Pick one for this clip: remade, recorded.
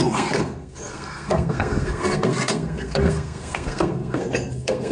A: remade